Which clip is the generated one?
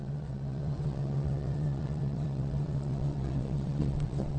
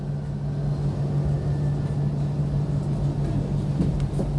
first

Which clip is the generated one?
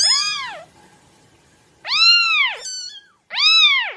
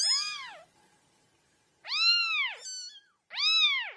first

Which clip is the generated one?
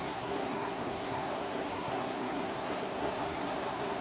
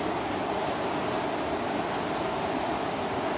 first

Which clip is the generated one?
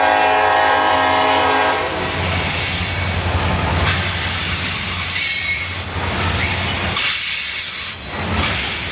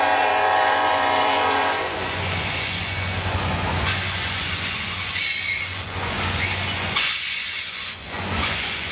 second